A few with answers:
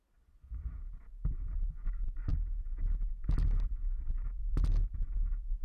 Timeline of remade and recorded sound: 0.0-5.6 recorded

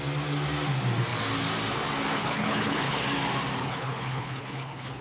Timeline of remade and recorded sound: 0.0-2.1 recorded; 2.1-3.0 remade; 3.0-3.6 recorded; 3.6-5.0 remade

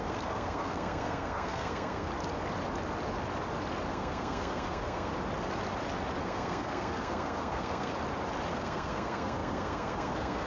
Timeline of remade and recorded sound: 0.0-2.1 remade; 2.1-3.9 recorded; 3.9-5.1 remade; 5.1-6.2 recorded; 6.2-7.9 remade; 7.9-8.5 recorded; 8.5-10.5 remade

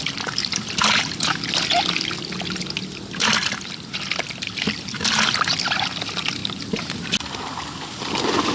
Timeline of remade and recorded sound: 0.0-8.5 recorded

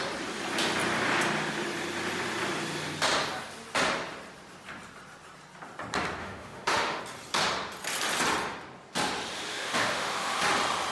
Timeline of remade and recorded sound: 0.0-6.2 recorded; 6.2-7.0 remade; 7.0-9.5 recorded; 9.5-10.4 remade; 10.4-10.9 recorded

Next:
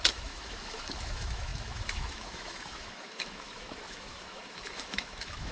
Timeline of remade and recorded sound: 0.0-5.5 remade